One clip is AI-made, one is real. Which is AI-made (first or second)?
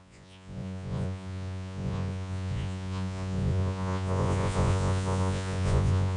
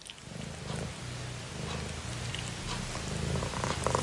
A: first